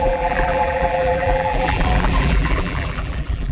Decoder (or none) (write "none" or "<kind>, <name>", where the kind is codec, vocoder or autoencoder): vocoder, BigVGAN v2